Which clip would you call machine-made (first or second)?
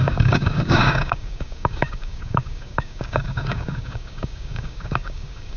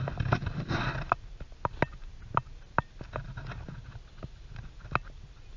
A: first